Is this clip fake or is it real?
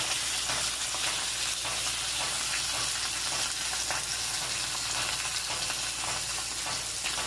real